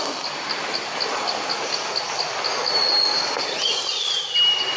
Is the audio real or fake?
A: real